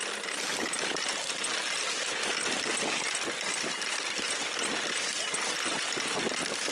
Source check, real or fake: real